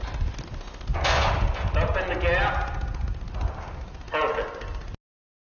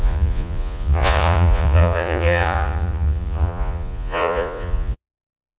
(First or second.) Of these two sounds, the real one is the first